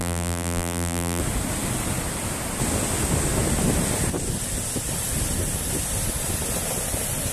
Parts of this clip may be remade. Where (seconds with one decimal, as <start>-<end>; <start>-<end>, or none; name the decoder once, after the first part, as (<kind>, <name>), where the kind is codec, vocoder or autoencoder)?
0.0-1.2 (vocoder, BigVGAN v2)

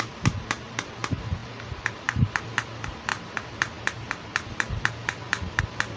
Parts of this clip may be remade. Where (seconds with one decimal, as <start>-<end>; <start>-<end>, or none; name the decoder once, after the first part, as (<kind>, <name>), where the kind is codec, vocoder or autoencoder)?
3.1-5.6 (vocoder, BigVGAN v2)

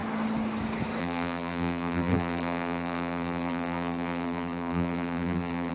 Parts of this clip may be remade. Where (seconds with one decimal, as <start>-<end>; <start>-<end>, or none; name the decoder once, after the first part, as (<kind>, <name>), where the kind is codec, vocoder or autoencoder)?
1.0-5.7 (vocoder, BigVGAN v2)

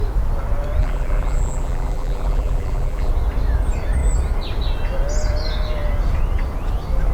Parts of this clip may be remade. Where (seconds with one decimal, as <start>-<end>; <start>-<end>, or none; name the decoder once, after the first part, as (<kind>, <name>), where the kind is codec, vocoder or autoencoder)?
0.8-3.1 (vocoder, BigVGAN v2)

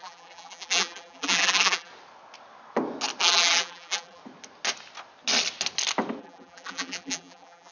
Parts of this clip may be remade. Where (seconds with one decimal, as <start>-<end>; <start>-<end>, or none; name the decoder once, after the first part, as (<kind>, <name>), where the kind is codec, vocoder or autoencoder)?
0.0-1.9 (vocoder, BigVGAN v2); 3.2-4.2; 6.2-7.7